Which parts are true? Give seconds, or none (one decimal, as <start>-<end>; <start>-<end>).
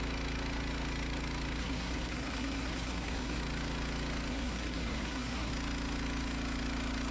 0.0-1.6; 3.4-4.3; 5.5-7.1